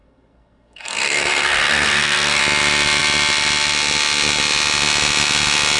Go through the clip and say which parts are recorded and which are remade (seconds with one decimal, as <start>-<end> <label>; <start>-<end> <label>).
0.0-2.4 remade; 2.4-5.8 recorded